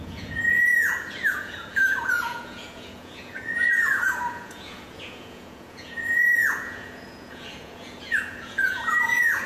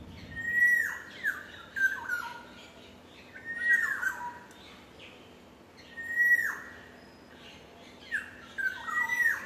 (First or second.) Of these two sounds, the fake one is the first